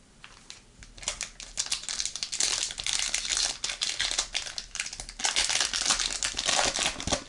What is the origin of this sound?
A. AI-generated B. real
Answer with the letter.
B